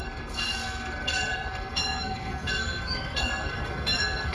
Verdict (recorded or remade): remade